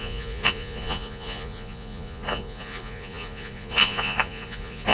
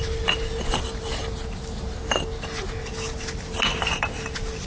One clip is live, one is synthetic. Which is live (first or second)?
second